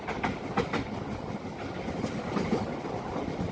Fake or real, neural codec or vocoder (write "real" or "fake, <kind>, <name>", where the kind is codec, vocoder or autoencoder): real